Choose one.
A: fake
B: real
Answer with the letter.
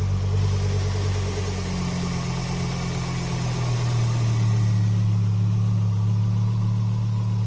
B